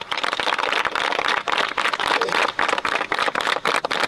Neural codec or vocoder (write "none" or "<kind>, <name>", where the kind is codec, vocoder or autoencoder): none